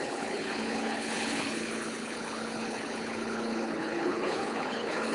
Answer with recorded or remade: remade